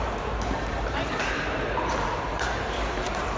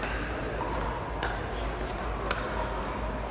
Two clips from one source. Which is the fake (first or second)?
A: first